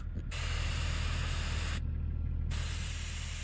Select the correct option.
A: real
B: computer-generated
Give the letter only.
A